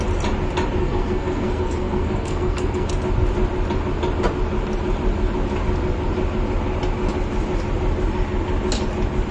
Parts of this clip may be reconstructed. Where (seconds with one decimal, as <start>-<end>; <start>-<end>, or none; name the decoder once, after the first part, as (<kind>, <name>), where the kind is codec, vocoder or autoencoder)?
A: 0.8-2.9 (codec, SNAC)